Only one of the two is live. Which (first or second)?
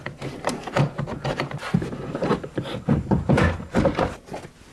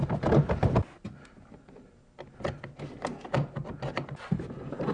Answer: second